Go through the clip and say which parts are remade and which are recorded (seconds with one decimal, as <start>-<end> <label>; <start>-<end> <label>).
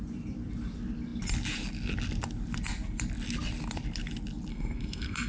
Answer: 0.0-4.5 recorded; 4.5-5.3 remade